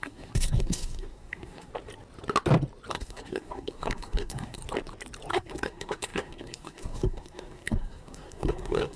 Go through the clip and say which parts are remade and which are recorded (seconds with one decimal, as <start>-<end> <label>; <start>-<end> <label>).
0.0-1.7 remade; 1.7-2.9 recorded; 2.9-4.6 remade; 4.6-5.3 recorded; 5.3-9.0 remade